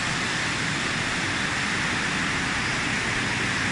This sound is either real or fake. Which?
real